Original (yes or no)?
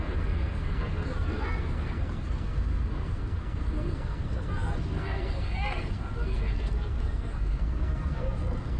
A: no